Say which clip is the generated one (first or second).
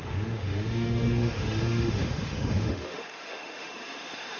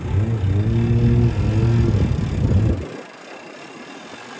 first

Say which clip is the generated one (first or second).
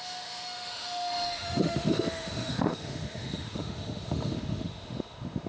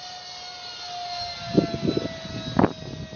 first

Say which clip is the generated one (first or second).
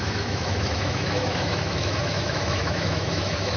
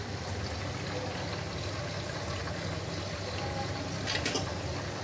first